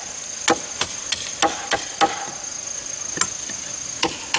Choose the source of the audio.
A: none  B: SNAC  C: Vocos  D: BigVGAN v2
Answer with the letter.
A